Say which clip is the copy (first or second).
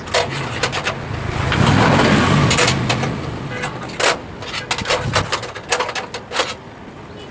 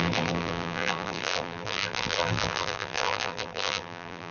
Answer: second